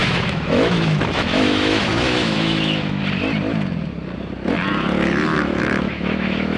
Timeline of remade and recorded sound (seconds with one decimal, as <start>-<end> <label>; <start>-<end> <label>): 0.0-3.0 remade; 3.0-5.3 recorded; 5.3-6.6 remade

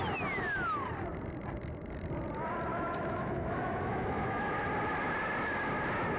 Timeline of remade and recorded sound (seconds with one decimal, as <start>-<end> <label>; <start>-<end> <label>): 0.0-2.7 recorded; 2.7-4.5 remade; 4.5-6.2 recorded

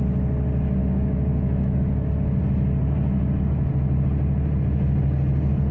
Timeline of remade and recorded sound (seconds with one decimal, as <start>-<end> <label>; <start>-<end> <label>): 0.0-0.8 recorded; 0.8-1.8 remade; 1.8-5.7 recorded